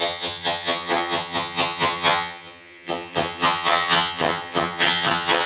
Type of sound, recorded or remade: remade